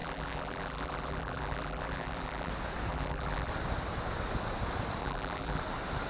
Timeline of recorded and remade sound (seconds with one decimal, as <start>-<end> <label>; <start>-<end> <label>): 0.0-2.5 remade; 2.5-2.9 recorded; 2.9-3.5 remade; 3.5-5.0 recorded; 5.0-5.6 remade; 5.6-6.1 recorded